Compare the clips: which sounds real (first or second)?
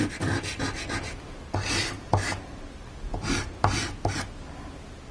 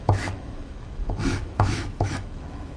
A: first